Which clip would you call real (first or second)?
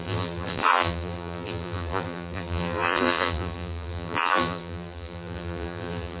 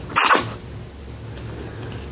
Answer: second